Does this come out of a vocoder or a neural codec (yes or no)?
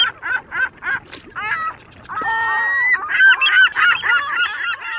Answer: no